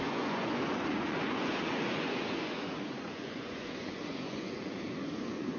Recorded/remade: remade